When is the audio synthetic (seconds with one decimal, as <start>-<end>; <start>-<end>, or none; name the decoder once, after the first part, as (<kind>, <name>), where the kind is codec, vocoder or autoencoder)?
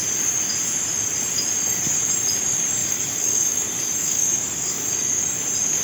2.8-3.6 (codec, DAC); 4.0-4.8